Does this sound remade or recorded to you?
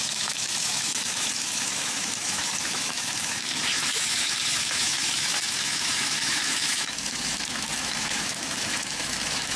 remade